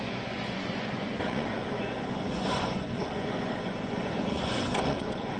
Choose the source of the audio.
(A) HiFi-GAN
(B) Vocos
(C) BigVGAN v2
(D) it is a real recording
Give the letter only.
B